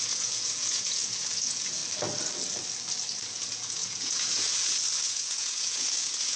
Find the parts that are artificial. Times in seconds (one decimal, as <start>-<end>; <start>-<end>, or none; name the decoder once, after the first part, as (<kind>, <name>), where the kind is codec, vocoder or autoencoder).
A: 0.0-1.8 (vocoder, Vocos); 3.3-6.4